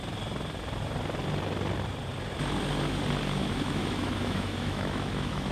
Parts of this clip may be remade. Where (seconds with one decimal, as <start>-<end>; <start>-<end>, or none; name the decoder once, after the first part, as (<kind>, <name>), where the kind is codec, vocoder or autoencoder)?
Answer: 3.4-5.5 (autoencoder, DAC-VAE)